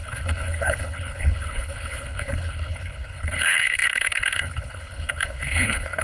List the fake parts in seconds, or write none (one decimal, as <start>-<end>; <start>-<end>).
0.0-6.0